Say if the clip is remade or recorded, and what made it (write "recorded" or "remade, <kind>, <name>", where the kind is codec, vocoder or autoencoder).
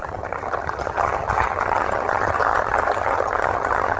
remade, vocoder, HiFi-GAN